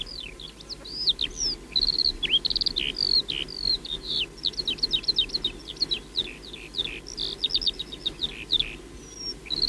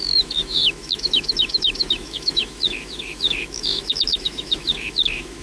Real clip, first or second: first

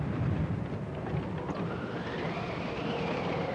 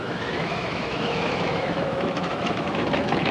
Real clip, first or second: first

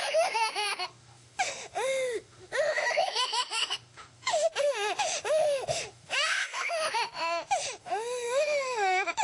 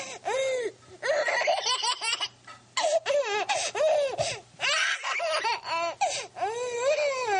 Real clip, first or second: second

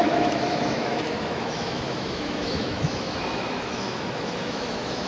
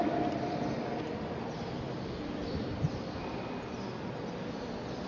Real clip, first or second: second